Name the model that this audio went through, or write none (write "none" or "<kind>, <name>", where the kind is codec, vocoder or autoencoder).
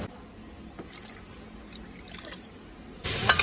none